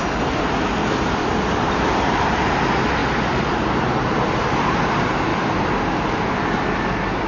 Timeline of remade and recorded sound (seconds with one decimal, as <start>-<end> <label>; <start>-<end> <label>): 0.0-0.8 recorded; 0.8-1.7 remade; 1.7-5.3 recorded; 5.3-6.2 remade; 6.2-7.3 recorded